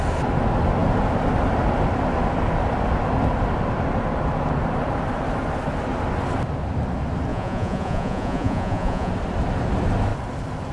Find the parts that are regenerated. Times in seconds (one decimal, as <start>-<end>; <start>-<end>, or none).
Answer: 7.3-9.1